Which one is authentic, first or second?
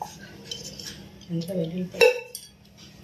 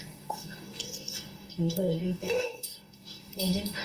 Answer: first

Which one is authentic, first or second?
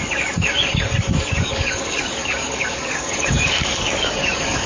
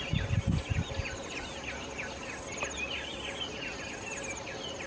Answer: second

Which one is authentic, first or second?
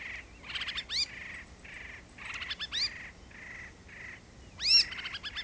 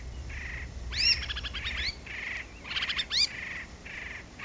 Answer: first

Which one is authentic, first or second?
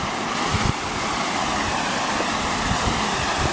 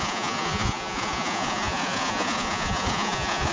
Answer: first